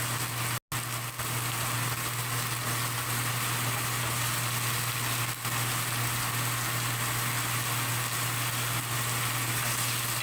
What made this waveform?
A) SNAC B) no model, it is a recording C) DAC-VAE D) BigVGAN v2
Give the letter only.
B